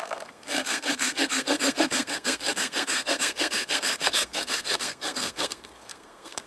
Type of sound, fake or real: fake